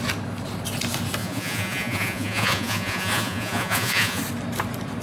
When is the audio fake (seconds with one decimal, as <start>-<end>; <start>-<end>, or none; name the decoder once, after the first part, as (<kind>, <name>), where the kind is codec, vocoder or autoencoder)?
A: 1.2-4.2 (vocoder, Vocos)